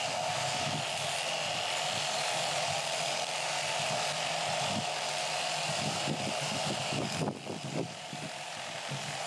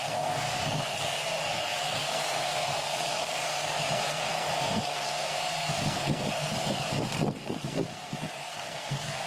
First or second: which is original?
first